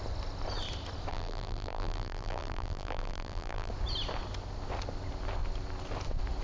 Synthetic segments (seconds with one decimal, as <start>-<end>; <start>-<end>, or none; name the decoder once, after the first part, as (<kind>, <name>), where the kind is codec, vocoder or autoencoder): 1.1-3.7 (vocoder, BigVGAN v2)